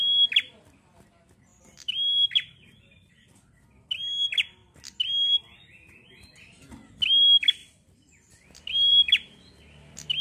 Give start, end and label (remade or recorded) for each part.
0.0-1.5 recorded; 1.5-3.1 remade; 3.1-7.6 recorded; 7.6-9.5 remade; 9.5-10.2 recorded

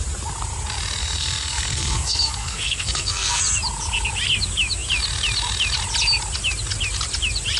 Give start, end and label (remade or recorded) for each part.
0.0-1.0 recorded; 1.0-3.4 remade; 3.4-7.6 recorded

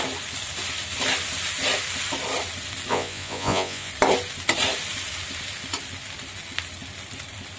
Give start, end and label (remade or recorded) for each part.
0.0-2.9 recorded; 2.9-3.9 remade; 3.9-7.6 recorded

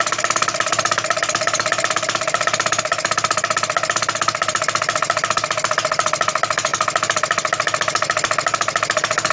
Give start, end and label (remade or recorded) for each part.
0.0-9.3 recorded

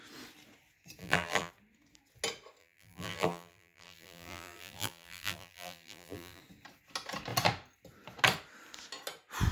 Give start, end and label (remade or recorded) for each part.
0.0-1.0 recorded; 1.0-1.5 remade; 1.5-2.6 recorded; 2.6-6.4 remade; 6.4-9.5 recorded

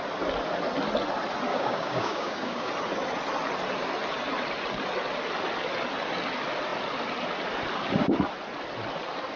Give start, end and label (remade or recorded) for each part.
0.0-1.5 recorded; 1.5-2.7 remade; 2.7-9.4 recorded

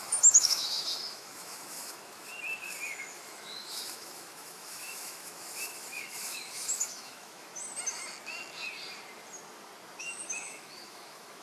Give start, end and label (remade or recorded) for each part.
0.0-2.3 remade; 2.3-2.9 recorded; 2.9-7.5 remade; 7.5-10.0 recorded; 10.0-11.4 remade

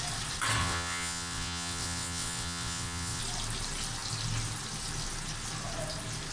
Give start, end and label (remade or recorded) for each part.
0.0-0.6 recorded; 0.6-3.2 remade; 3.2-6.3 recorded